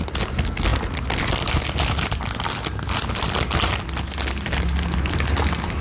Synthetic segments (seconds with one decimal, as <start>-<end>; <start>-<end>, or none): none